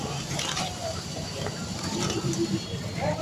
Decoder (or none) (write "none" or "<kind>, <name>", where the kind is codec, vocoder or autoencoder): vocoder, BigVGAN v2